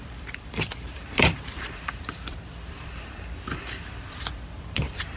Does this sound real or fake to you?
fake